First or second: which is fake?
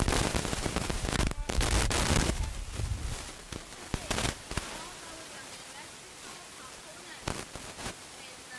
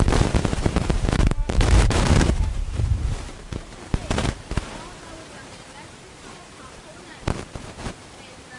second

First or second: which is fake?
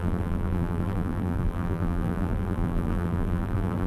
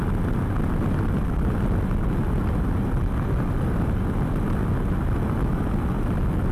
first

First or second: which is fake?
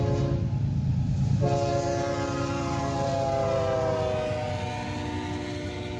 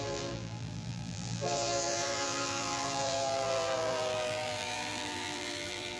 second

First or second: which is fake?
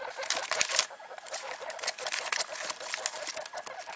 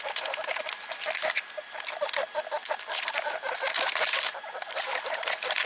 second